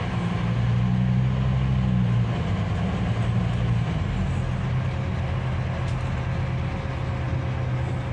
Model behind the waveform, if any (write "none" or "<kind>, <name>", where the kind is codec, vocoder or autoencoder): none